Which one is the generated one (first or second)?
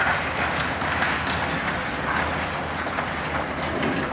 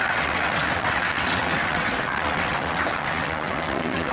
second